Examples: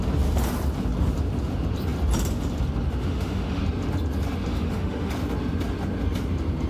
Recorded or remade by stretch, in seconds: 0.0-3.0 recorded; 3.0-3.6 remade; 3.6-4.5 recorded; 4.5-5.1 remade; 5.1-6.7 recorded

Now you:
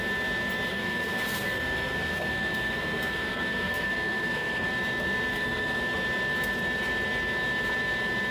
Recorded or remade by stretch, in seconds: 0.0-0.7 recorded; 0.7-4.7 remade; 4.7-5.3 recorded; 5.3-5.8 remade; 5.8-8.3 recorded

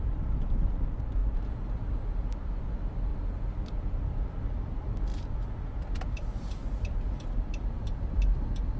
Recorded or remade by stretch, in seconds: 0.0-1.2 remade; 1.2-2.2 recorded; 2.2-3.1 remade; 3.1-3.8 recorded; 3.8-8.8 remade

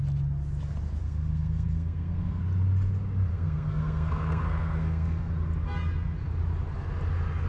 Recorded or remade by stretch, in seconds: 0.0-1.0 recorded; 1.0-2.4 remade; 2.4-3.3 recorded; 3.3-5.3 remade; 5.3-7.5 recorded

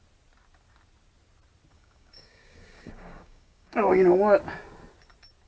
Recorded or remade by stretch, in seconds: 0.0-1.7 recorded; 1.7-3.9 remade; 3.9-5.5 recorded

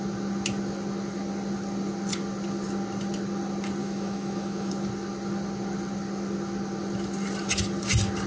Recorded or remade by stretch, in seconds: 0.0-3.8 recorded; 3.8-4.7 remade; 4.7-8.3 recorded

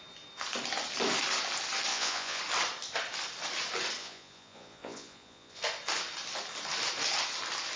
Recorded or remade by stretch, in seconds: 0.0-1.9 recorded; 1.9-2.4 remade; 2.4-4.0 recorded; 4.0-5.6 remade; 5.6-7.8 recorded

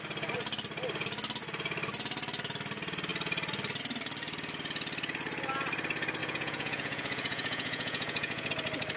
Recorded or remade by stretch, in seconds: 0.0-6.2 recorded; 6.2-8.5 remade; 8.5-9.0 recorded